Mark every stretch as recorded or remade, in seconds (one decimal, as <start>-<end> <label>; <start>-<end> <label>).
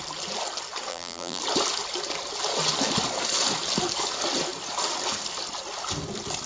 0.0-0.9 recorded; 0.9-1.4 remade; 1.4-6.5 recorded